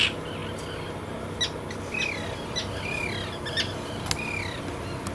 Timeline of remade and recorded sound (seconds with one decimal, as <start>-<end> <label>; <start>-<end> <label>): 0.0-5.1 recorded